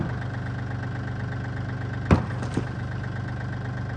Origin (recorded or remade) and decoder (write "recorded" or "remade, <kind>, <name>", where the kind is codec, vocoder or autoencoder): recorded